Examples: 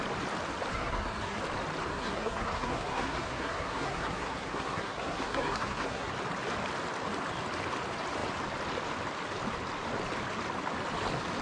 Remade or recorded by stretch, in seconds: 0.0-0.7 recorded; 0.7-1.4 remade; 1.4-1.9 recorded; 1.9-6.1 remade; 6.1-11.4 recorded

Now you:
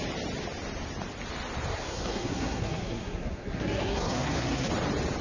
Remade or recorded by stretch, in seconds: 0.0-1.7 recorded; 1.7-4.7 remade; 4.7-5.2 recorded

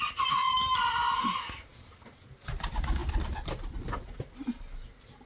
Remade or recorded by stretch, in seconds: 0.0-5.3 recorded

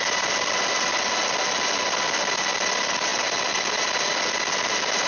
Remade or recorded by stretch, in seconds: 0.0-5.1 recorded

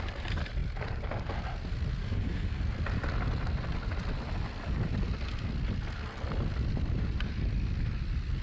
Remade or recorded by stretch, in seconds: 0.0-2.0 recorded; 2.0-2.6 remade; 2.6-8.4 recorded